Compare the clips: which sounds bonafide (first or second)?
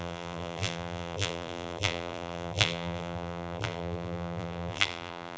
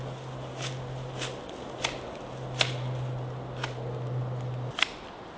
second